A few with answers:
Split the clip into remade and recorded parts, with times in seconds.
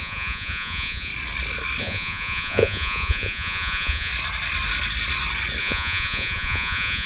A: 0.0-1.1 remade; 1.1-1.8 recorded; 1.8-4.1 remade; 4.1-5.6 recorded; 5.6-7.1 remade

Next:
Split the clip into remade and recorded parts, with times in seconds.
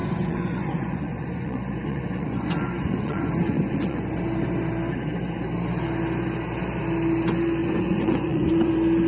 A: 0.0-4.2 remade; 4.2-7.6 recorded; 7.6-8.7 remade; 8.7-9.1 recorded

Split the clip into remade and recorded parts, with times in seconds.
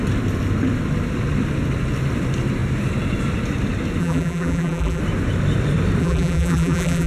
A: 0.0-4.0 recorded; 4.0-5.0 remade; 5.0-6.0 recorded; 6.0-7.1 remade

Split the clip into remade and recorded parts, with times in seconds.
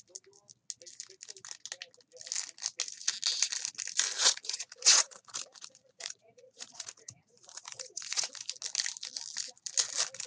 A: 0.0-4.2 recorded; 4.2-8.3 remade; 8.3-10.3 recorded